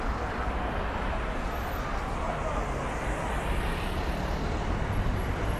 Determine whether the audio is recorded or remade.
remade